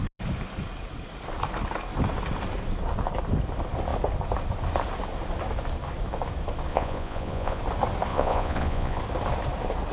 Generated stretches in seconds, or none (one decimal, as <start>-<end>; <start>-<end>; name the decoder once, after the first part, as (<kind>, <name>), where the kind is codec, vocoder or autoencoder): 6.7-7.6 (vocoder, Vocos); 8.1-9.0